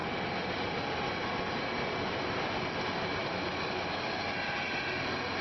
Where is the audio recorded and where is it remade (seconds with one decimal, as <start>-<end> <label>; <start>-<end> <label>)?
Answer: 0.0-3.2 recorded; 3.2-3.9 remade; 3.9-5.4 recorded